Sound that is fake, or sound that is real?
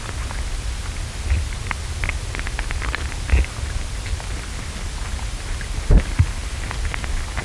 real